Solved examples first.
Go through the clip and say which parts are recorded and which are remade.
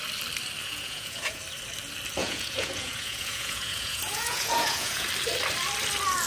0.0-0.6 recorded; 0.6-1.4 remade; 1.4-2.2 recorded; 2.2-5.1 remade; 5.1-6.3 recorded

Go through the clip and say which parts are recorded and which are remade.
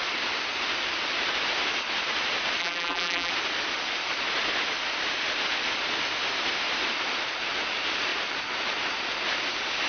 0.0-2.6 recorded; 2.6-3.3 remade; 3.3-9.9 recorded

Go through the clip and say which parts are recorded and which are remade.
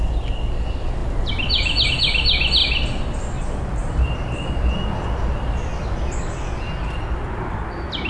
0.0-8.1 recorded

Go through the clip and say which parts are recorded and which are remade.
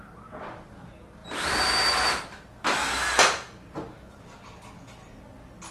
0.0-5.7 recorded